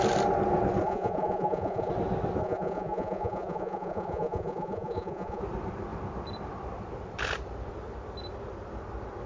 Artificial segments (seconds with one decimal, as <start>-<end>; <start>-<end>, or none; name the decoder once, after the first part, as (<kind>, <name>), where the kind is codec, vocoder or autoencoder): 0.8-1.9 (vocoder, Vocos); 2.4-5.4